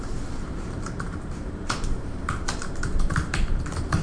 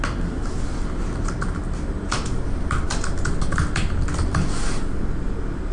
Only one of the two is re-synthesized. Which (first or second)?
first